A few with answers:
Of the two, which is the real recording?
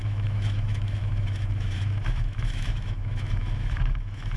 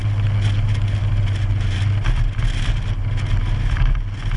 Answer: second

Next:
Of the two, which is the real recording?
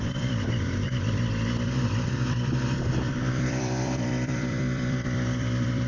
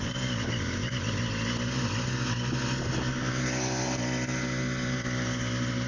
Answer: second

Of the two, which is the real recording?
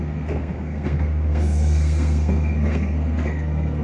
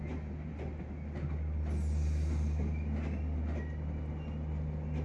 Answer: second